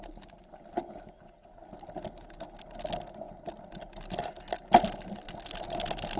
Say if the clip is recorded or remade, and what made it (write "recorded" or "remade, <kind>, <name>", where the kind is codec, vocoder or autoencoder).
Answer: recorded